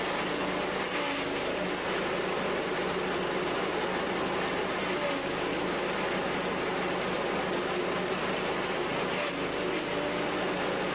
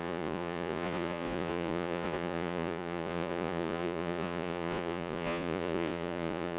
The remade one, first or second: second